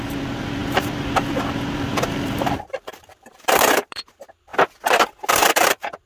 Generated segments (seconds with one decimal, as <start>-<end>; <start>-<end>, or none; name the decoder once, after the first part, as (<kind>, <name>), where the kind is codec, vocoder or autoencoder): 0.0-4.5 (vocoder, BigVGAN v2); 5.3-6.1